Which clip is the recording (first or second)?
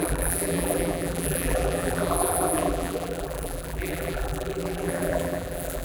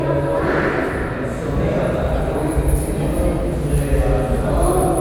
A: second